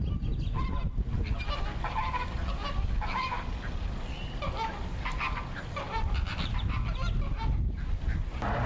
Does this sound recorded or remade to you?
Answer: recorded